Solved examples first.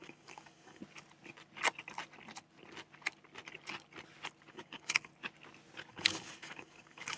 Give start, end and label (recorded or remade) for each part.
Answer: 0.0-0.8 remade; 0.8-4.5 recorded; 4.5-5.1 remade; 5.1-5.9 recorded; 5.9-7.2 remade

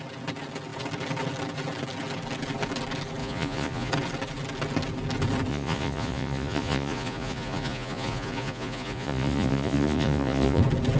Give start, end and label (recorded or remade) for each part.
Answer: 0.0-3.2 recorded; 3.2-3.9 remade; 3.9-5.5 recorded; 5.5-10.6 remade; 10.6-11.0 recorded

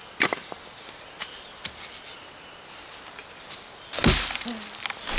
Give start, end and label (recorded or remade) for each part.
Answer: 0.0-5.2 recorded